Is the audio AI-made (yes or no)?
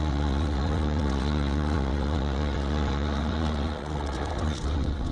yes